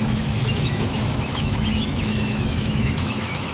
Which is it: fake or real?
fake